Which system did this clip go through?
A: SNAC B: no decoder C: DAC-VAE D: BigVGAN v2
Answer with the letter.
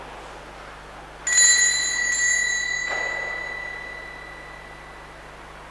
B